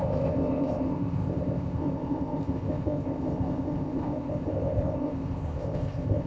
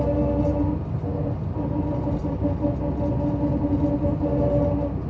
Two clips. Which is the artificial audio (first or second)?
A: first